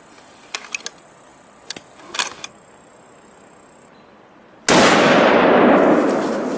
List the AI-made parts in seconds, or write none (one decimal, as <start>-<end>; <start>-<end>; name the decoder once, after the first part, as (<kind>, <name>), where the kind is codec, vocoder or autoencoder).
none